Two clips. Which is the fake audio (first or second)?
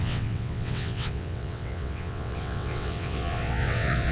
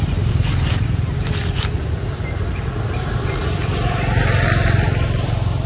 first